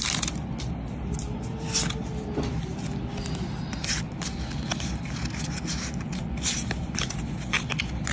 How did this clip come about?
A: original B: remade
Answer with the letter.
A